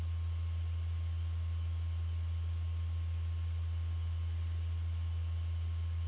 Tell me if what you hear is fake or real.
real